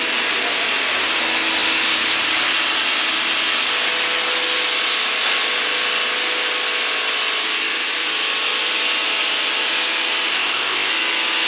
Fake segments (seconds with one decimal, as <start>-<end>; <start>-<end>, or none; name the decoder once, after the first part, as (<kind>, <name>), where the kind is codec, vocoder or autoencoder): 10.3-10.9 (codec, ZipCodec)